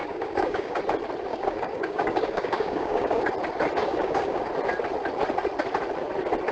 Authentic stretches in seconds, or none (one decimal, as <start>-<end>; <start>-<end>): 0.8-1.3; 3.3-3.8; 4.5-6.5